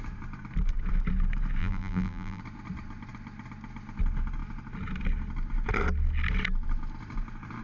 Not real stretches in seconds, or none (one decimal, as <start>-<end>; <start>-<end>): 1.6-2.4